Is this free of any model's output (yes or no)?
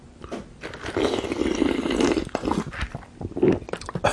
yes